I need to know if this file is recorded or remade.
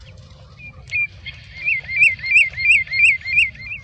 recorded